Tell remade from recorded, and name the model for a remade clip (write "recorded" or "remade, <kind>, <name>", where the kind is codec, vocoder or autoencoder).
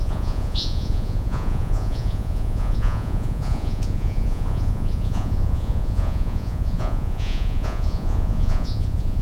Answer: remade, vocoder, Vocos